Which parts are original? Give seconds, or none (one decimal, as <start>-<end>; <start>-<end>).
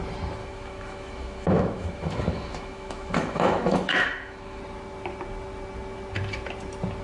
0.0-0.4; 4.6-7.0